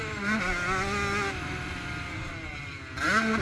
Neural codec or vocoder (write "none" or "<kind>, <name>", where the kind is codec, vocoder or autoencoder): none